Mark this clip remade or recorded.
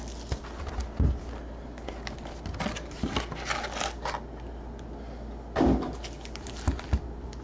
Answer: recorded